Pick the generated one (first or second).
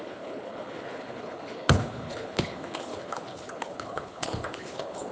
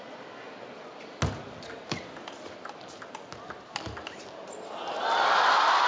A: first